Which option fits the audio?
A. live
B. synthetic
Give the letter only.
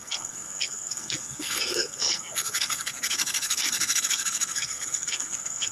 B